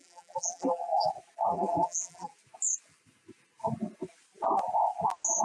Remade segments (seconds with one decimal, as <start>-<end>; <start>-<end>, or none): 0.0-1.1; 1.5-2.3